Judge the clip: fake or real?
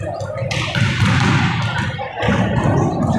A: fake